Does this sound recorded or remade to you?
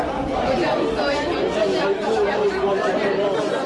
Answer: recorded